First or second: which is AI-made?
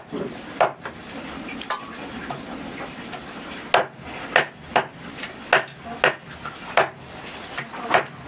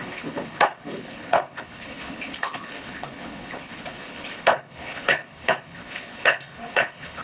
second